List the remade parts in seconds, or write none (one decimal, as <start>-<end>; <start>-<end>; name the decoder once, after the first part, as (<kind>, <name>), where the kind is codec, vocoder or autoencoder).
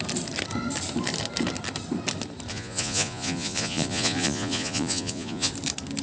2.5-5.5 (vocoder, Vocos)